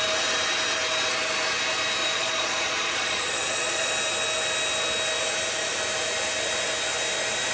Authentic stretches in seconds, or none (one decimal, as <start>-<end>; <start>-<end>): 0.0-2.0; 3.9-7.5